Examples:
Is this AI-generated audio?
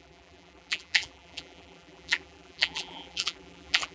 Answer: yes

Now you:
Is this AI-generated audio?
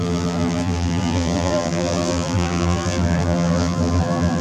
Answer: yes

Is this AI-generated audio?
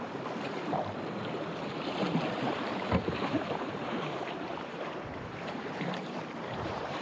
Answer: yes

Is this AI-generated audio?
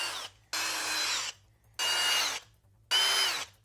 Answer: no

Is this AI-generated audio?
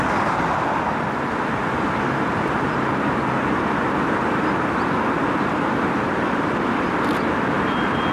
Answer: no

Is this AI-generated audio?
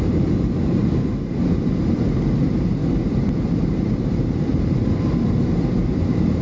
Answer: yes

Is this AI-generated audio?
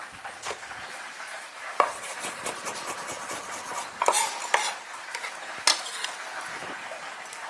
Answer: no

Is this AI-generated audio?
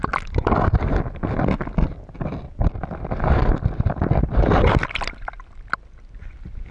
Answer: yes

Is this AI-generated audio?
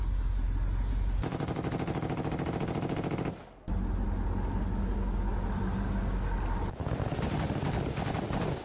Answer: no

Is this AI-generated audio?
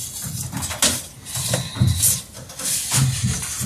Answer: no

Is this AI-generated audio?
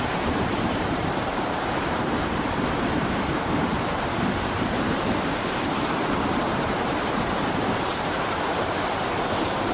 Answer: yes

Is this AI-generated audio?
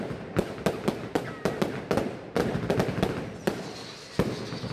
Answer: no